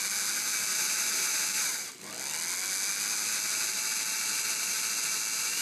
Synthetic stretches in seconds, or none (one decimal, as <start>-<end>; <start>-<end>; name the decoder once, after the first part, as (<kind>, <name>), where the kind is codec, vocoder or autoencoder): 0.7-1.9 (vocoder, BigVGAN v2)